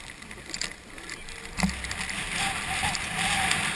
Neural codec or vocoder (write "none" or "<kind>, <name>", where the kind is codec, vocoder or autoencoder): none